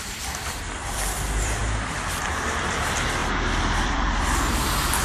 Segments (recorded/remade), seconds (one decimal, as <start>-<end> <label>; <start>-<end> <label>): 0.0-1.6 remade; 1.6-2.6 recorded; 2.6-3.2 remade; 3.2-3.8 recorded; 3.8-5.0 remade

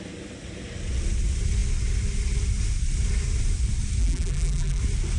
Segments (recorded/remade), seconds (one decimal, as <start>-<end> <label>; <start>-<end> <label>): 0.0-4.0 recorded; 4.0-4.8 remade; 4.8-5.2 recorded